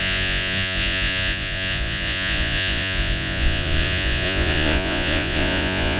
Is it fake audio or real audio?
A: fake